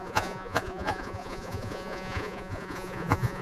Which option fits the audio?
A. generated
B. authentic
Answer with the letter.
A